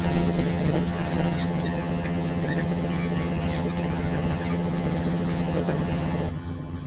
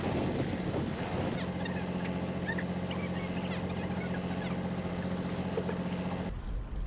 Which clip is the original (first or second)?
second